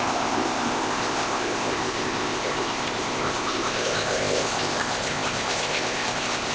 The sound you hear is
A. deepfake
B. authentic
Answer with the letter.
A